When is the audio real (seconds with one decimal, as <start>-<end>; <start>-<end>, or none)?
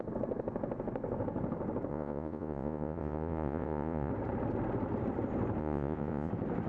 0.0-1.9; 4.1-5.6; 6.3-6.7